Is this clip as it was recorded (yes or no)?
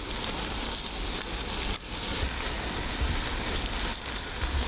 yes